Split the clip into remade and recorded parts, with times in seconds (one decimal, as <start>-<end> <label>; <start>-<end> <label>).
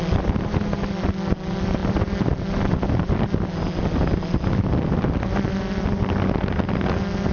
0.0-7.3 recorded